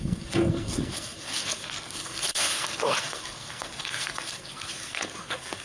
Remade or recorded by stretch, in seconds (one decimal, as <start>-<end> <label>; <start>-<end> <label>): 0.0-5.6 remade